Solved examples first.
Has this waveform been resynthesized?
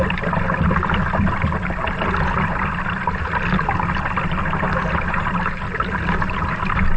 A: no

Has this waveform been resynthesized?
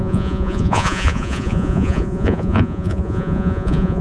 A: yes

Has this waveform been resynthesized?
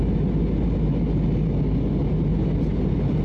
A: no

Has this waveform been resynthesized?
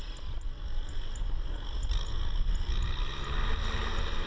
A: no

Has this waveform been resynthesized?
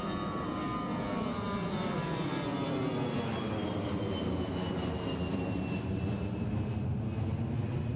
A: no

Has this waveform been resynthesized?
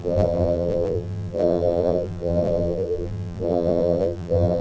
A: yes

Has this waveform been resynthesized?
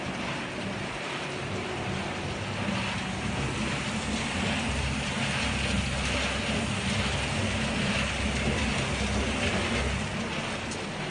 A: no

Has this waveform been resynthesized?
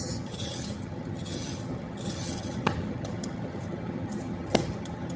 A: yes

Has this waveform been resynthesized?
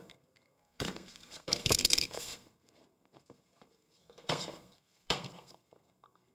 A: yes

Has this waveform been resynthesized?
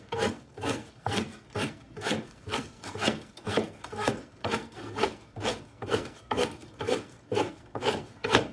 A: yes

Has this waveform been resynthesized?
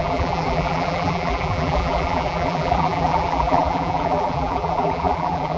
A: yes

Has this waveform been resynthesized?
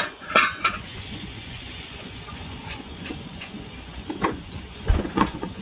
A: yes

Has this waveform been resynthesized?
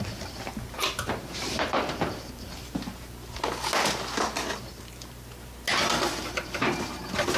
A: no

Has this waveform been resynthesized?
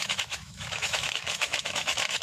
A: yes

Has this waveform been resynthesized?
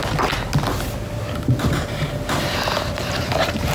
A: no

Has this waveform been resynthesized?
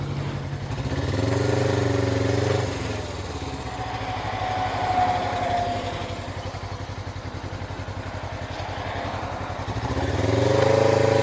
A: no